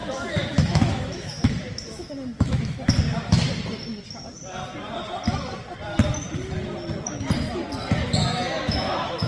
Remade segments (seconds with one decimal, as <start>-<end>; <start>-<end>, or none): 0.0-3.0; 8.2-9.3

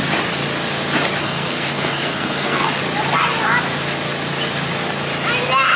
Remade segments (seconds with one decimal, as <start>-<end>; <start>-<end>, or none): 1.2-2.8